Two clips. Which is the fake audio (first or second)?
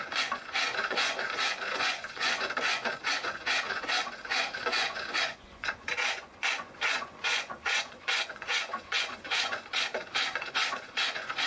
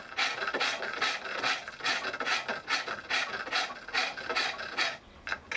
first